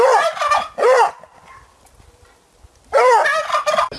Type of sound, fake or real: real